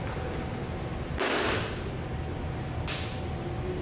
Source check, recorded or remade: recorded